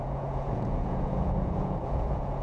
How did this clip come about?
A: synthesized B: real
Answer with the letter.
A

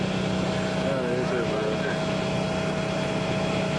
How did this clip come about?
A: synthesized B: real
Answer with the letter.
B